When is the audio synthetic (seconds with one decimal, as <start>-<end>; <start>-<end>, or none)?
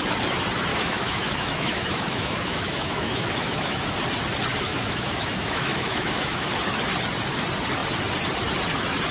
0.7-3.8; 4.5-6.5